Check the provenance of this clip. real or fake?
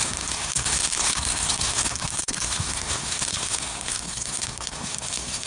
fake